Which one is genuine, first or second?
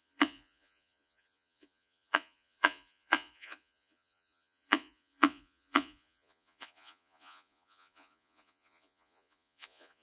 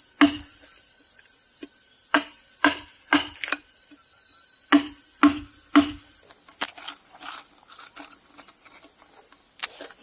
second